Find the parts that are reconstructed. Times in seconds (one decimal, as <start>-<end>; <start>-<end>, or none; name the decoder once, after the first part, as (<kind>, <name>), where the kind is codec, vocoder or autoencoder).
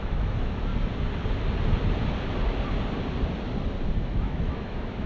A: 0.0-0.7 (autoencoder, DAC-VAE); 3.8-5.1